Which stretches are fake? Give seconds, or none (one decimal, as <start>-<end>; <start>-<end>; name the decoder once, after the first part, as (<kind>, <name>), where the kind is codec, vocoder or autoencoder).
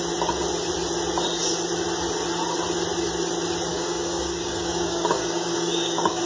3.7-6.3 (codec, DAC)